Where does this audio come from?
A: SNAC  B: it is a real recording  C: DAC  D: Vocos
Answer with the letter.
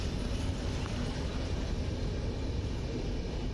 B